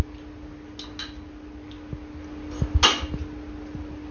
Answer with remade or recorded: recorded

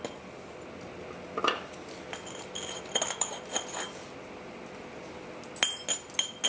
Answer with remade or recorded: recorded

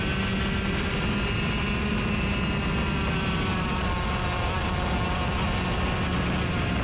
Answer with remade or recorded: recorded